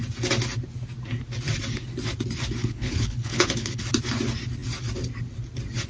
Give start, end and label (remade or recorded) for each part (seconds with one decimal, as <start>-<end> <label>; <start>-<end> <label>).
0.0-2.6 recorded; 2.6-3.8 remade; 3.8-5.9 recorded